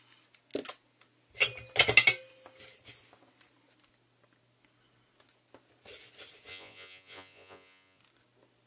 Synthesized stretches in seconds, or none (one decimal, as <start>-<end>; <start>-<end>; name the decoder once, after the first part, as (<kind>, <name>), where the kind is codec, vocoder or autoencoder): 6.5-8.0 (vocoder, Vocos)